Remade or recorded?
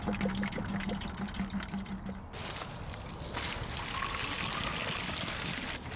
recorded